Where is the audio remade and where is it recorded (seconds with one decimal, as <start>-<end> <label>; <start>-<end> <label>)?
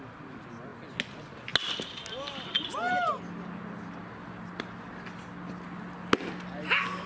0.0-7.1 recorded